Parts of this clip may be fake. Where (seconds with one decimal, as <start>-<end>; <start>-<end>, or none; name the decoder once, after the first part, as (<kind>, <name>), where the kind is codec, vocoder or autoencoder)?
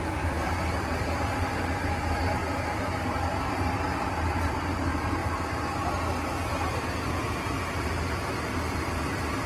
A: 0.0-2.4 (vocoder, BigVGAN v2); 3.5-5.2; 7.5-9.5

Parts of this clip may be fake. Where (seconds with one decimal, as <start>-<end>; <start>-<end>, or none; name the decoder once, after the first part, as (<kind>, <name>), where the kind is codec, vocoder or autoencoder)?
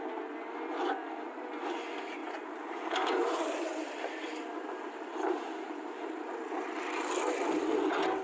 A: 2.2-7.1 (vocoder, BigVGAN v2)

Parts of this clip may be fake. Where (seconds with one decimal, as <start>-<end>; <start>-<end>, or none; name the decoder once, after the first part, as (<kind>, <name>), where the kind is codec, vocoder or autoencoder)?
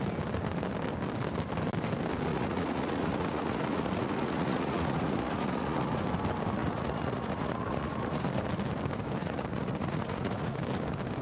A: 2.3-6.0 (vocoder, Vocos); 6.6-8.2; 9.2-10.6